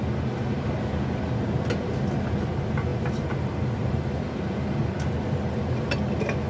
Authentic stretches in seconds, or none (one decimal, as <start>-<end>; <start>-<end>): 0.0-6.5